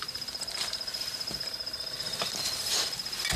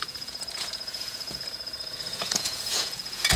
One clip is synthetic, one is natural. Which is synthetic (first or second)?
second